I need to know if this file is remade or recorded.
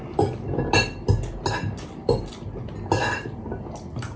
recorded